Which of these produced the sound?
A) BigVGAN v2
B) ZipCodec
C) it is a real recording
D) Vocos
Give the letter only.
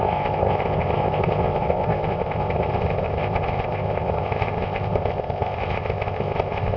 B